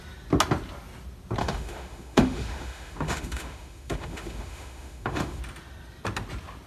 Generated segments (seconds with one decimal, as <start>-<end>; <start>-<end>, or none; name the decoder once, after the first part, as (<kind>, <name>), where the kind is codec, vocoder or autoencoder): 1.4-5.4 (autoencoder, DAC-VAE)

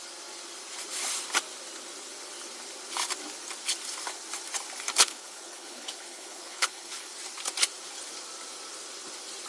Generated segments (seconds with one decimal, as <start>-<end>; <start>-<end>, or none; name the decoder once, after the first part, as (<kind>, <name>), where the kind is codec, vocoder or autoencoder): 5.0-7.1 (codec, HILCodec)